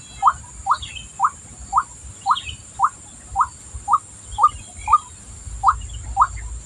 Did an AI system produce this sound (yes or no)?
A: no